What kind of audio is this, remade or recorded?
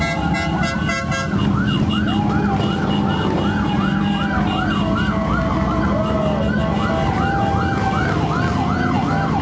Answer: recorded